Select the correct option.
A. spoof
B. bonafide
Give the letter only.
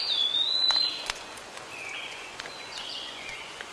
A